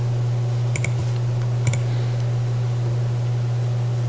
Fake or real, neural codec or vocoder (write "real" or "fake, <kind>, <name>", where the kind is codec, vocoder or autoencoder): real